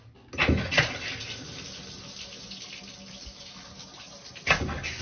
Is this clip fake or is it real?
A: real